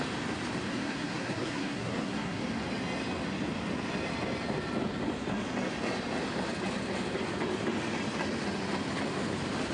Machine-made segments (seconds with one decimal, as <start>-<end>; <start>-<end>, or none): 0.7-2.4